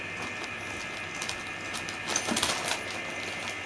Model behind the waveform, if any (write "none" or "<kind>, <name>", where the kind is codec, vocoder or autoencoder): none